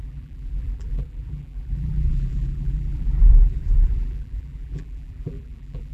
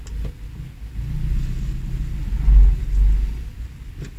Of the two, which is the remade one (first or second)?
first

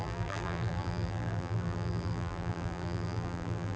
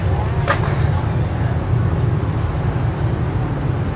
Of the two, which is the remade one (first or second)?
first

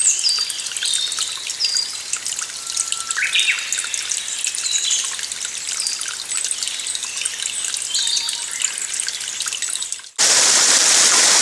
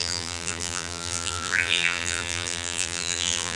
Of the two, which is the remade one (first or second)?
second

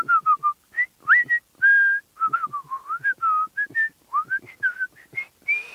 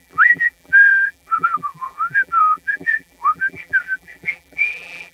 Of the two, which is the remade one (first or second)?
second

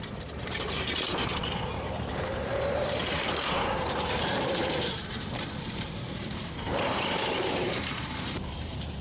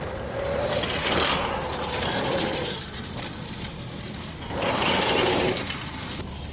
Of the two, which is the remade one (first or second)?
first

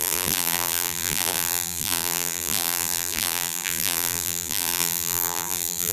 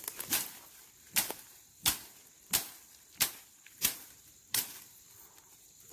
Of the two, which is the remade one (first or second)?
first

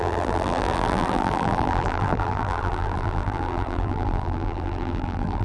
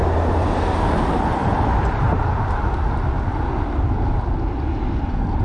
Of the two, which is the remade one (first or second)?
first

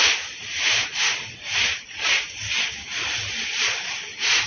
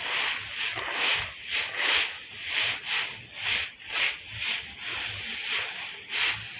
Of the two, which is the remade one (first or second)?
first